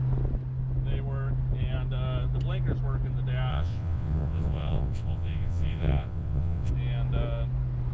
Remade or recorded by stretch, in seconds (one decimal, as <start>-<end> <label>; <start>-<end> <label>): 0.0-3.5 recorded; 3.5-6.7 remade; 6.7-7.9 recorded